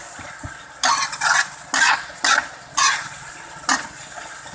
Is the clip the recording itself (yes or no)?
yes